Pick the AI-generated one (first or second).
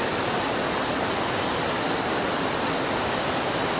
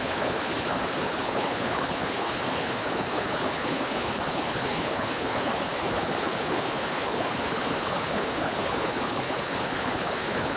second